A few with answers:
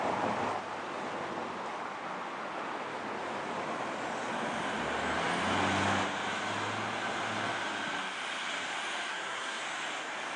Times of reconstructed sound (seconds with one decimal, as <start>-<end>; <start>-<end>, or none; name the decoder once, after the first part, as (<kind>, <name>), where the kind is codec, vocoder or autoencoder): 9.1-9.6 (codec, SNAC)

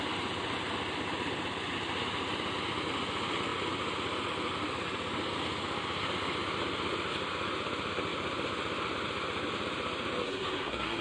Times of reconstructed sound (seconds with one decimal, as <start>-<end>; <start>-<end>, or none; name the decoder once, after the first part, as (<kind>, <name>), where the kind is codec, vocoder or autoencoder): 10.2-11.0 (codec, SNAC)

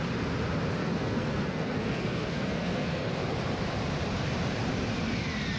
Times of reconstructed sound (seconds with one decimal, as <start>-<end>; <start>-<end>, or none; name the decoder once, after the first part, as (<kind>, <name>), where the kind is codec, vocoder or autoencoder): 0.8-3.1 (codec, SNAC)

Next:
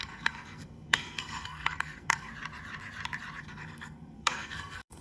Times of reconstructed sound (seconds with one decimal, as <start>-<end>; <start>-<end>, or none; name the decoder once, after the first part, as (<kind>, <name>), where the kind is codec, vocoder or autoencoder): 0.0-2.3 (codec, SNAC); 3.4-5.0